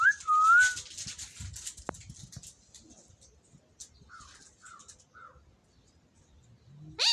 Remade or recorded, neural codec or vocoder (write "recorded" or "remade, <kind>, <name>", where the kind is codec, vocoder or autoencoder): recorded